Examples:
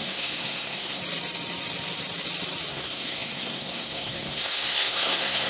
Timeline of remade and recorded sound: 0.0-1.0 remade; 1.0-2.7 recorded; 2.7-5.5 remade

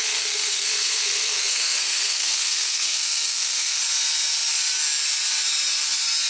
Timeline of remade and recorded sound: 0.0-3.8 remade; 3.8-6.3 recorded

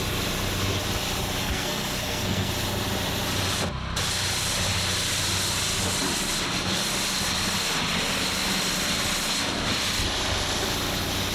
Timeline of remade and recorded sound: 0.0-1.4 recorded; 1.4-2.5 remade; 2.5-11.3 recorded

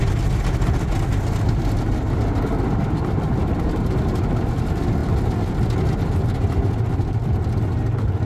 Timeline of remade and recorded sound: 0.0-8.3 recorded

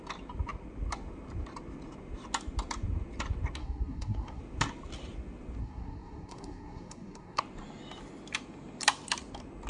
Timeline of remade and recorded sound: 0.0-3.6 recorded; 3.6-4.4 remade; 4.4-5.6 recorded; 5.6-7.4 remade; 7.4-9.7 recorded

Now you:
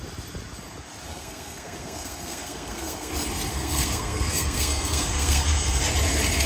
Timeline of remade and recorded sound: 0.0-1.1 recorded; 1.1-3.1 remade; 3.1-3.5 recorded; 3.5-5.8 remade; 5.8-6.5 recorded